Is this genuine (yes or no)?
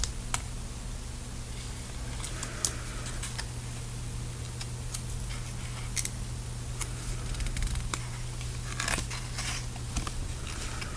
yes